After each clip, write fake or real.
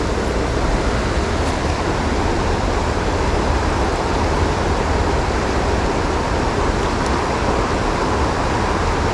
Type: real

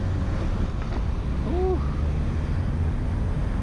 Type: real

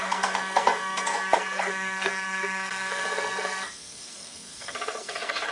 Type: fake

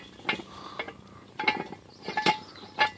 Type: real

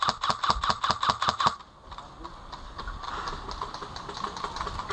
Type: real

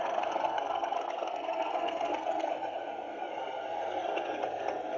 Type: fake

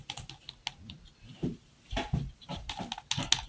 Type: real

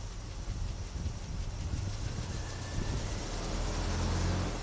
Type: real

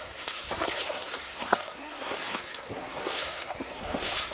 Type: fake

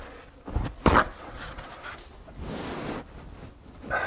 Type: real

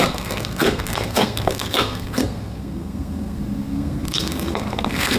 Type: fake